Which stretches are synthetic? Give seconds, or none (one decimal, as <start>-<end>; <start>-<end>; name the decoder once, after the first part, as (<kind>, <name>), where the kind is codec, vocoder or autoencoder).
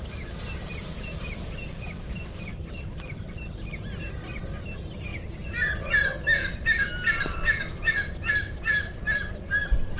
5.1-5.9 (vocoder, BigVGAN v2); 7.3-8.1